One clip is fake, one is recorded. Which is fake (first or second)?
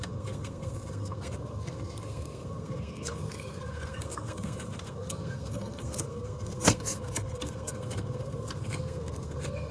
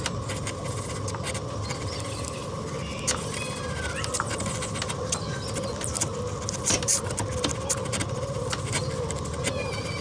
first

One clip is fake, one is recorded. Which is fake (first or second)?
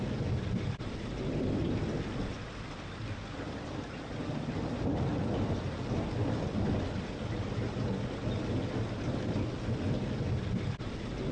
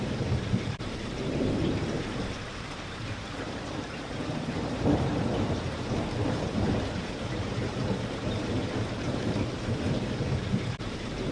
second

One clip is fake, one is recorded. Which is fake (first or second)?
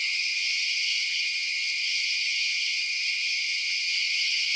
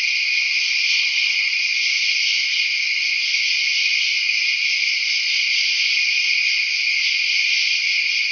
first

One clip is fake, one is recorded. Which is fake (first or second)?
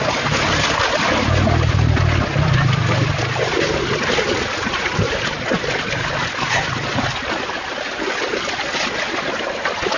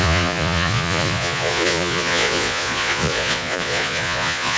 second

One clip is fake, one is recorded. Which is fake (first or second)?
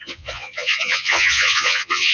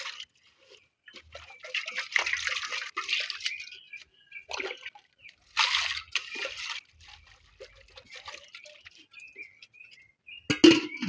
first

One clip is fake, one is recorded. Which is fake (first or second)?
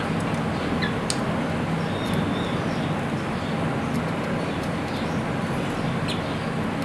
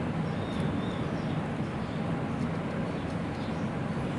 second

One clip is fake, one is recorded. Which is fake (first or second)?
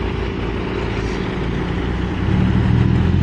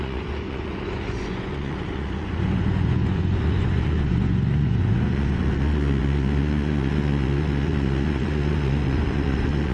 second